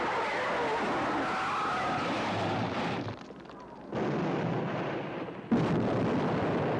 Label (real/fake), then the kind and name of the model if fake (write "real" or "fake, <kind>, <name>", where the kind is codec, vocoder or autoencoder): real